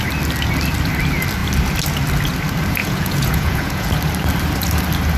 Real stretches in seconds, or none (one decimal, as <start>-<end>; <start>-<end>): 0.0-2.8; 3.9-5.2